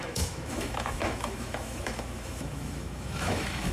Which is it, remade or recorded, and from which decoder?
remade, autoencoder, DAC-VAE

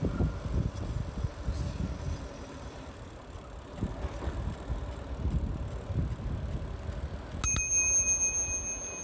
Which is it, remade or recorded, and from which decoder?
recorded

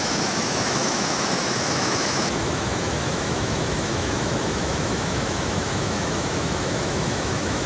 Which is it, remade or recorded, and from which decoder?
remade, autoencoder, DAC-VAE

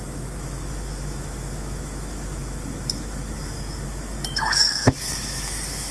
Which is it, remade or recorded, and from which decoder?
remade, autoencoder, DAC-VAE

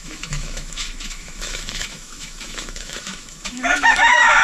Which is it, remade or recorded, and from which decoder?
remade, autoencoder, DAC-VAE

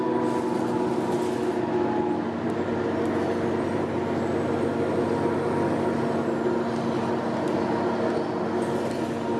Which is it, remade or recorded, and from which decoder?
recorded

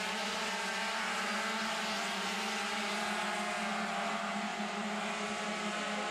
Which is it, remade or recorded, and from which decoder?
recorded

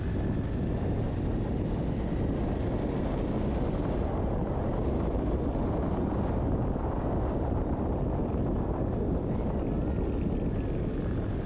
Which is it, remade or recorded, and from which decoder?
recorded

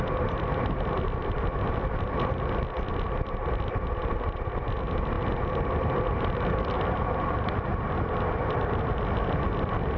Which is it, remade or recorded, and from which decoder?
recorded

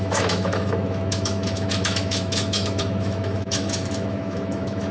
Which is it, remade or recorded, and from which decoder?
remade, autoencoder, DAC-VAE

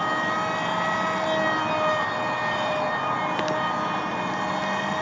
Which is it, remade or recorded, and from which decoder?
recorded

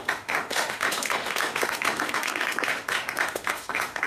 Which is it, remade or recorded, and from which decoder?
remade, autoencoder, DAC-VAE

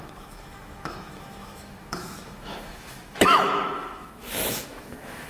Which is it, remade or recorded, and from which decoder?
remade, autoencoder, DAC-VAE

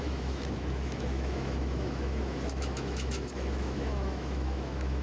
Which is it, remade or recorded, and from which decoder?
remade, autoencoder, DAC-VAE